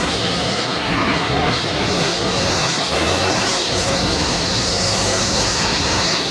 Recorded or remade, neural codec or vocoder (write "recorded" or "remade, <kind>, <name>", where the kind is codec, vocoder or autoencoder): remade, codec, SNAC